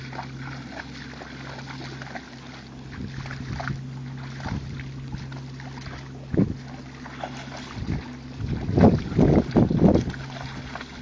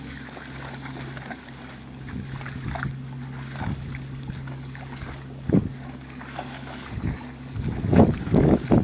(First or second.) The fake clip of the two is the second